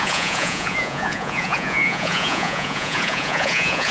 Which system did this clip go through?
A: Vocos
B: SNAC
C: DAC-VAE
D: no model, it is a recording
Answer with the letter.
A